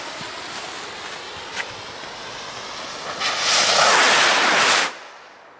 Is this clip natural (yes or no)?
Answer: yes